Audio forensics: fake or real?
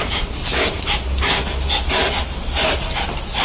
real